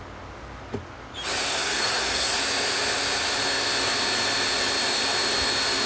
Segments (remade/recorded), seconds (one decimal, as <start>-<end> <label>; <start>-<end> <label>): 0.0-1.5 recorded; 1.5-2.4 remade; 2.4-5.9 recorded